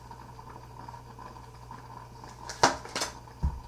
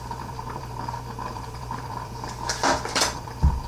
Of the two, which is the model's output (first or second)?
second